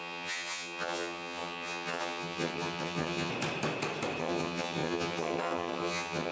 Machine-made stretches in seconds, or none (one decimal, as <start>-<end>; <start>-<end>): 0.0-3.3; 4.2-6.3